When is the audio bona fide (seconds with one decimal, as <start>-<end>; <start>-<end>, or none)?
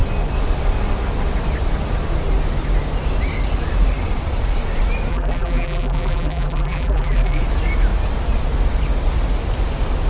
0.0-5.1; 7.4-10.1